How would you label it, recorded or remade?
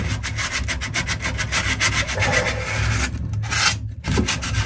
recorded